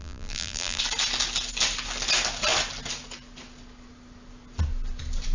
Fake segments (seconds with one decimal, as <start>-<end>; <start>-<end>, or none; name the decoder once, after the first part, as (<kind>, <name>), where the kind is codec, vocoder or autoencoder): 0.0-0.8 (vocoder, BigVGAN v2)

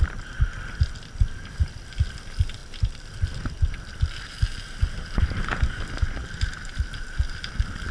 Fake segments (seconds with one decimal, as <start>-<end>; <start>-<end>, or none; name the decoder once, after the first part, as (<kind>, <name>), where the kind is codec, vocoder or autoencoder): 2.6-6.7 (vocoder, BigVGAN v2)

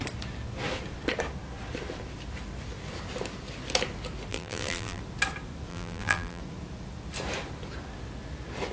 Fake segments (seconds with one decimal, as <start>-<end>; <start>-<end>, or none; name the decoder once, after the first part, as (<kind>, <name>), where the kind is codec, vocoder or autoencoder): 4.3-5.0 (vocoder, BigVGAN v2); 5.7-6.4

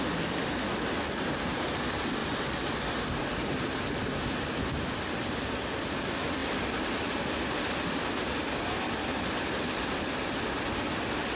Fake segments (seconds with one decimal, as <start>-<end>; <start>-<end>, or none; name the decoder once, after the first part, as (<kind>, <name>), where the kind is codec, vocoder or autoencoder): none

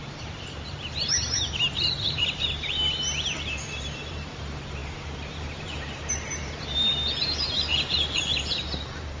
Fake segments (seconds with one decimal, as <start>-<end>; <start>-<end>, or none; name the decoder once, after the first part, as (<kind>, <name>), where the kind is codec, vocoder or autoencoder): 0.0-9.2 (vocoder, BigVGAN v2)

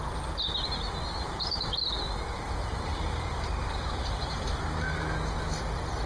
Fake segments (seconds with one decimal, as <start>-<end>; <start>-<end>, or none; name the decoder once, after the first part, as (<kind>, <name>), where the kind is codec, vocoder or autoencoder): 1.2-1.8 (vocoder, BigVGAN v2); 2.9-5.0

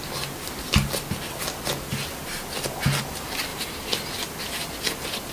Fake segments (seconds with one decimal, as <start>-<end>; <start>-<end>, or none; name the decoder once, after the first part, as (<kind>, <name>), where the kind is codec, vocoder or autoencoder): none

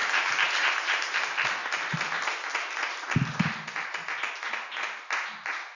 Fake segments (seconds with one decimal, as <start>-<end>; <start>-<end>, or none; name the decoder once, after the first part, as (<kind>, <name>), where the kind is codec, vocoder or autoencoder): 0.0-1.2 (vocoder, BigVGAN v2)